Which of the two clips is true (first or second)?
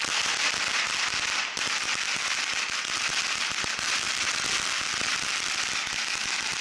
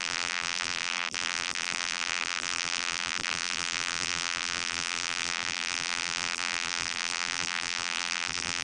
first